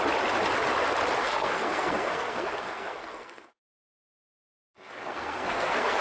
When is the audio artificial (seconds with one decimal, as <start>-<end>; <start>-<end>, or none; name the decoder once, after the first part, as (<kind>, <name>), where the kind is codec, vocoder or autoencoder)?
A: 1.2-3.6 (codec, SNAC); 4.7-6.0